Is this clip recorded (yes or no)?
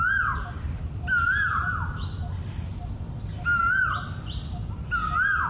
yes